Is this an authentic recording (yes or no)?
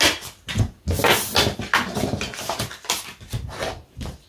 yes